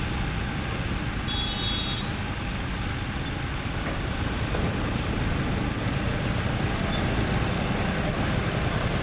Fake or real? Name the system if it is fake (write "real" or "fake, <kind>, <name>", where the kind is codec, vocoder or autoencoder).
real